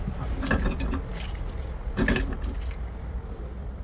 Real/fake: real